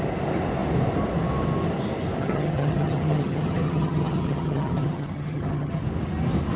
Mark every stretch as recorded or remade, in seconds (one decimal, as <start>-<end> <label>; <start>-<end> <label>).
0.0-2.2 recorded; 2.2-5.8 remade; 5.8-6.6 recorded